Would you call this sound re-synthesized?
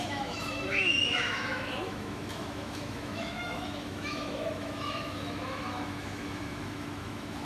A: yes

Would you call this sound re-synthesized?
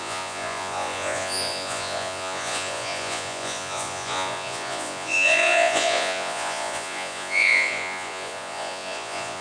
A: yes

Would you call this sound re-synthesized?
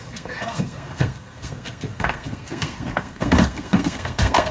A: yes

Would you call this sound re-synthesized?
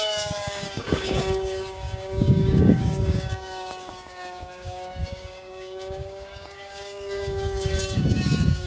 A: yes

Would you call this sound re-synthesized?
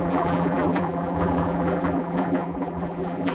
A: yes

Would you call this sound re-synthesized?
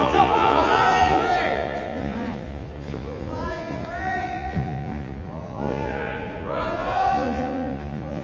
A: yes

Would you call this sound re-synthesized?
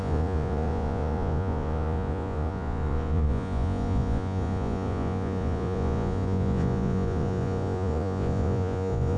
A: yes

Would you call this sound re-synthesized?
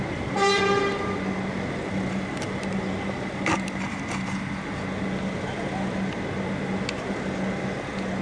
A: no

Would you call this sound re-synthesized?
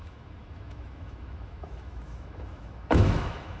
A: yes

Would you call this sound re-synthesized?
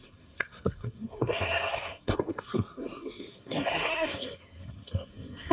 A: yes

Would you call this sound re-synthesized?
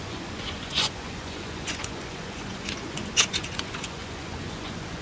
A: yes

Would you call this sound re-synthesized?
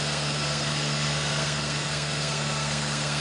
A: yes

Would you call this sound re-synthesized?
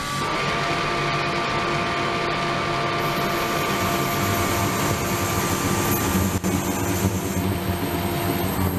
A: no